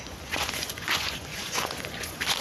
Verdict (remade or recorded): remade